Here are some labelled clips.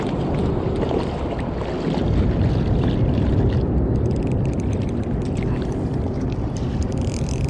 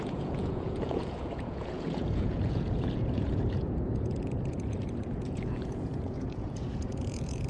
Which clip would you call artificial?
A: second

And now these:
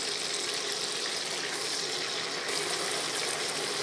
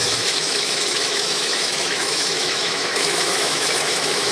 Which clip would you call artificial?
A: second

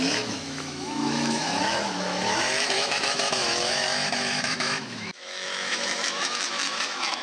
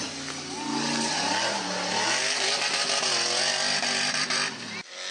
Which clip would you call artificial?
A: first